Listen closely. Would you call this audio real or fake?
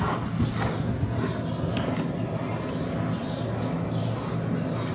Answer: real